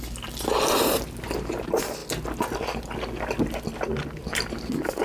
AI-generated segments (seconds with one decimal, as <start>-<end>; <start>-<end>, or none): none

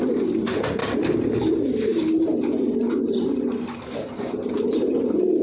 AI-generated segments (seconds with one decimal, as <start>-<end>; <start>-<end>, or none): 0.8-1.4